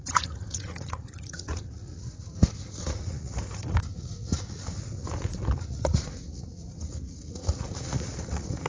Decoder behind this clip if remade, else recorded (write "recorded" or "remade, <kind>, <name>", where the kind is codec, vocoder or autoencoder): remade, vocoder, Vocos